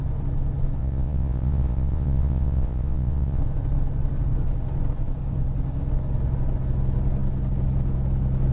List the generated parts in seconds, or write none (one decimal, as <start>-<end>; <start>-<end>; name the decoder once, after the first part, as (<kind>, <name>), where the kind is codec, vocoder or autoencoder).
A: 0.8-3.4 (vocoder, Vocos)